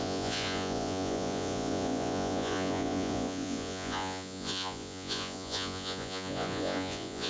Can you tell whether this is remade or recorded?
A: remade